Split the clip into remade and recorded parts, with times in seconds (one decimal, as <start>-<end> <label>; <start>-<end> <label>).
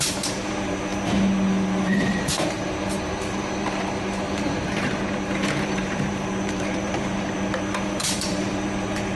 0.0-0.9 remade; 0.9-2.1 recorded; 2.1-9.2 remade